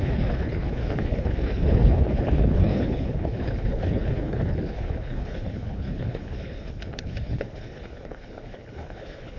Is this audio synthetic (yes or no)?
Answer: yes